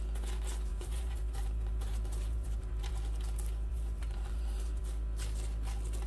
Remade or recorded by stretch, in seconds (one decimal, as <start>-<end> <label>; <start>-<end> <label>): 0.0-0.7 recorded; 0.7-2.9 remade; 2.9-3.7 recorded; 3.7-4.8 remade; 4.8-6.1 recorded